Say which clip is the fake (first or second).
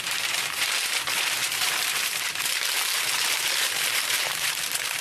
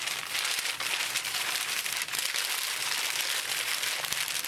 first